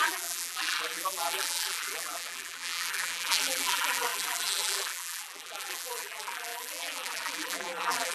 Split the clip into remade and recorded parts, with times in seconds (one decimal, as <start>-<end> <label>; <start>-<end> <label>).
0.0-8.1 remade